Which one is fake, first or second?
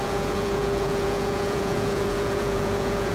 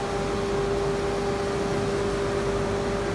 first